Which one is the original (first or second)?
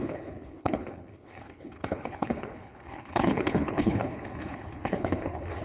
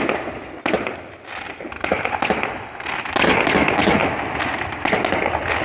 second